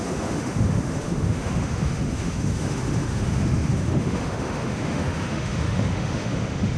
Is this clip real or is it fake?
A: fake